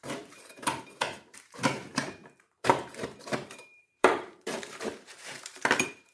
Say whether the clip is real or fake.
fake